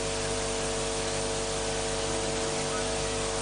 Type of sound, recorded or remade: recorded